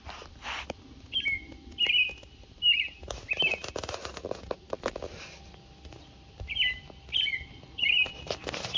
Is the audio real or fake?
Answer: real